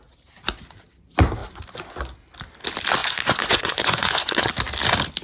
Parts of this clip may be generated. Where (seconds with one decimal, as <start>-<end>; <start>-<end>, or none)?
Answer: 3.0-4.5